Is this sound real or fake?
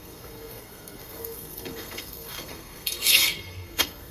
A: fake